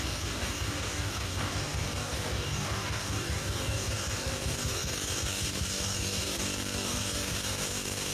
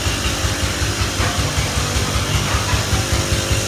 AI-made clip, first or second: first